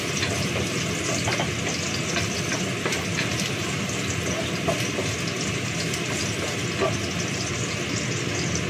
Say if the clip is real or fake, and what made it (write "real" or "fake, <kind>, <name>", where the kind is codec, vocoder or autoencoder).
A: real